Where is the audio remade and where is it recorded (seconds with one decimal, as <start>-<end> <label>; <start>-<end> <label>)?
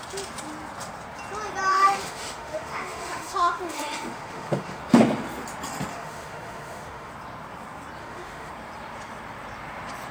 0.0-1.7 recorded; 1.7-4.8 remade; 4.8-5.9 recorded; 5.9-7.1 remade; 7.1-8.0 recorded; 8.0-8.5 remade; 8.5-10.1 recorded